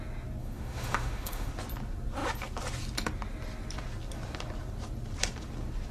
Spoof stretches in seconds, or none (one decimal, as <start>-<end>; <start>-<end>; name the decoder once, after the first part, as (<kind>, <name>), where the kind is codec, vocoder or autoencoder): 0.4-1.5 (autoencoder, DAC-VAE)